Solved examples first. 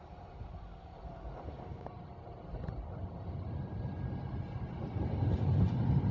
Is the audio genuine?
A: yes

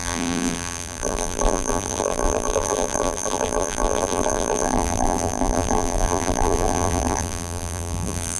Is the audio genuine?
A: no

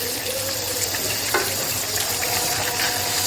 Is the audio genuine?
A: no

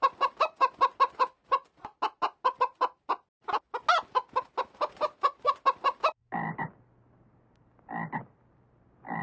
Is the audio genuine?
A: yes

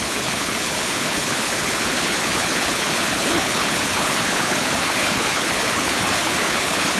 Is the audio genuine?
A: no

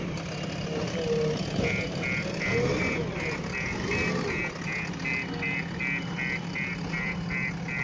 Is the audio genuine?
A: yes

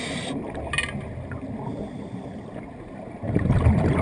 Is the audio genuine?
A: yes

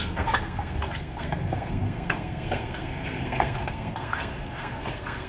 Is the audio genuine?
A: no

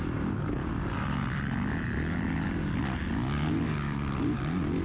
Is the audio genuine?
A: yes